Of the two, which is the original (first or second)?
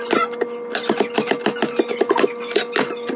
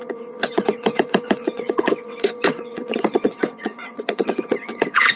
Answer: first